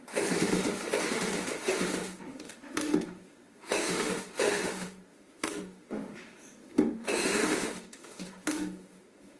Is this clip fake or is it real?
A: fake